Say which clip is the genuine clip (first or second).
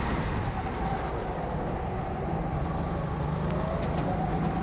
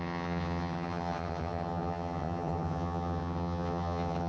first